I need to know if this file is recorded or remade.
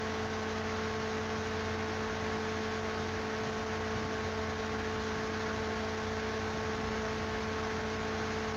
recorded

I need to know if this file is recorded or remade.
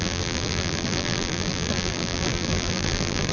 remade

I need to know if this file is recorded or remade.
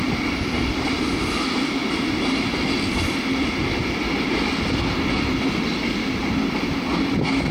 recorded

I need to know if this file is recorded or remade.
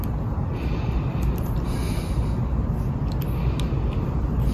recorded